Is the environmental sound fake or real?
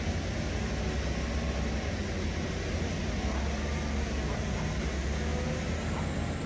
real